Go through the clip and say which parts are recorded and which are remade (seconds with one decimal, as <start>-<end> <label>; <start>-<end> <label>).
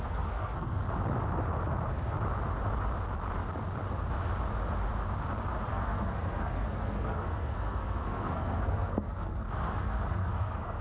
0.0-0.8 remade; 0.8-5.7 recorded; 5.7-10.8 remade